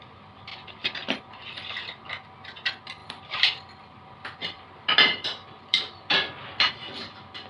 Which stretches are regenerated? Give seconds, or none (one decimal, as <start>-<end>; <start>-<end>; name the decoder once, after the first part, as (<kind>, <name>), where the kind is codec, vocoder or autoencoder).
3.0-6.7 (vocoder, BigVGAN v2)